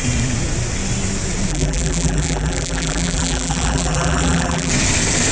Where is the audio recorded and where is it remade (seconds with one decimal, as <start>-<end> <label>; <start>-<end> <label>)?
0.0-1.5 recorded; 1.5-4.7 remade; 4.7-5.3 recorded